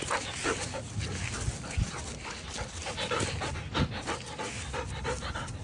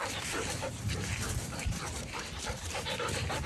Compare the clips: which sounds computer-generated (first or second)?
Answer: second